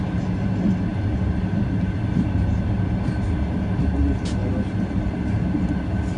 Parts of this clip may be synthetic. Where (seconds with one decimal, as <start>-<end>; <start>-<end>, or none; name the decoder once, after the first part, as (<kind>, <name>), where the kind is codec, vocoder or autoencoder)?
none